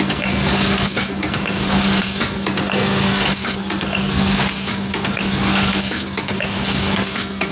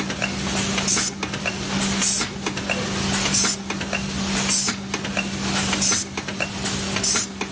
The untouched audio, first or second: second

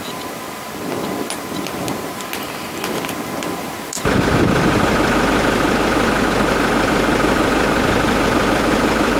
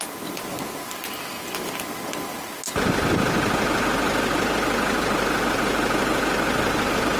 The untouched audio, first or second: second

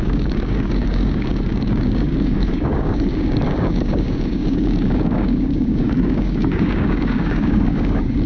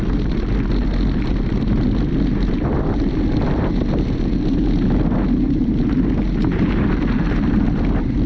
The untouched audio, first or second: second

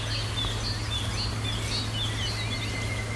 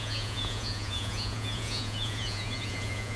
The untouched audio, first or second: first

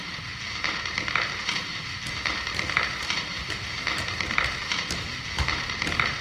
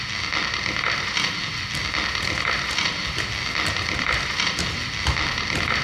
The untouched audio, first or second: second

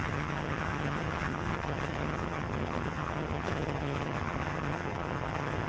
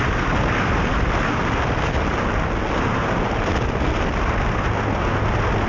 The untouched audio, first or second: second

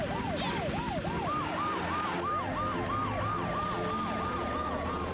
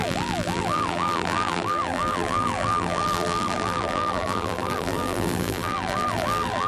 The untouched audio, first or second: first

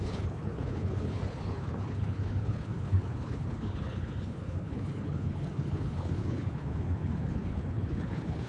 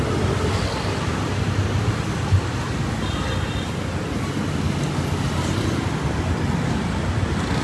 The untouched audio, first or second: second